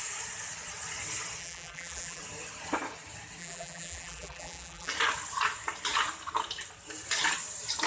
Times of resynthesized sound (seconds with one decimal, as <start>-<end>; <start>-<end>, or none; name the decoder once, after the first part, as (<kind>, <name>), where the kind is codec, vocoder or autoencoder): 1.4-2.2 (vocoder, BigVGAN v2); 3.4-4.9